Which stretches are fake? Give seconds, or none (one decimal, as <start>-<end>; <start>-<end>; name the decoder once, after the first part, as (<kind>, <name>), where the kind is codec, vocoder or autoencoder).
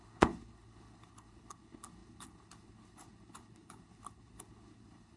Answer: 0.0-5.2 (codec, HILCodec)